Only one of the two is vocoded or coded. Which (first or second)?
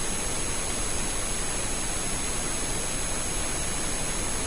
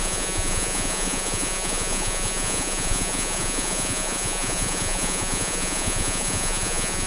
second